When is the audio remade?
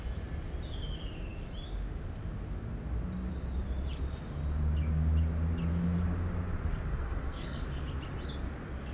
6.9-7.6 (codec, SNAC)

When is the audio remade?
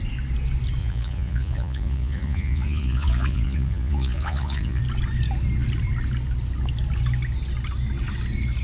0.8-4.8 (vocoder, Vocos)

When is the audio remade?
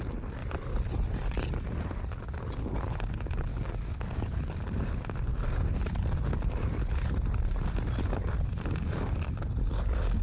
3.5-4.4 (codec, DAC)